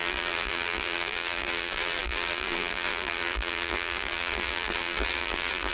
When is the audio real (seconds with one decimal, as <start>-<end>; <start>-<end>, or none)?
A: none